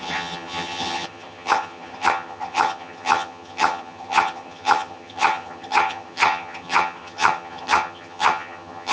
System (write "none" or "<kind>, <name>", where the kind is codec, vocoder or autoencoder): vocoder, HiFi-GAN